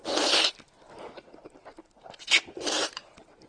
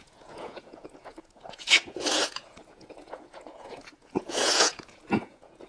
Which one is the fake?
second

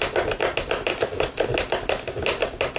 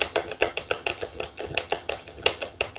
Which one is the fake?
second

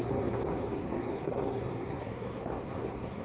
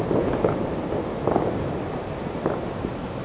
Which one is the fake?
first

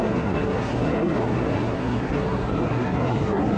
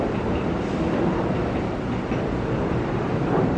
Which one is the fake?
first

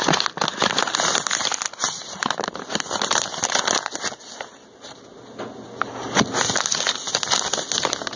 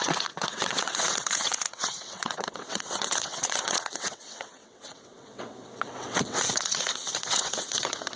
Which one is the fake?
second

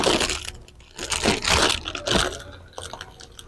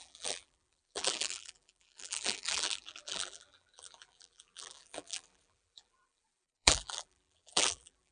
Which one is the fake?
second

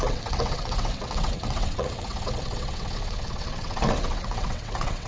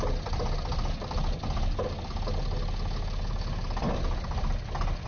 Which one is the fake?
first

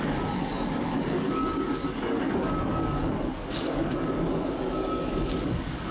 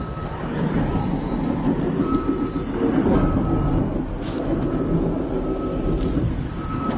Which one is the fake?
first